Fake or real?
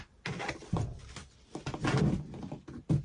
real